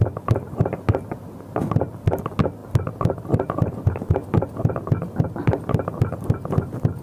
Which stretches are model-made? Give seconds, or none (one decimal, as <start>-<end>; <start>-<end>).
none